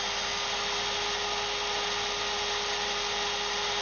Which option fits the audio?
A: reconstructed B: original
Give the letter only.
B